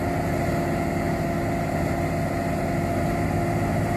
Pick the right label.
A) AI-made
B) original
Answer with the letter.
B